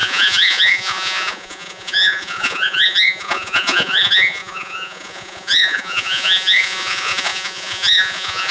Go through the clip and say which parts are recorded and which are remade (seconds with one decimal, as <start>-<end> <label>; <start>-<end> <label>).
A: 0.0-8.5 remade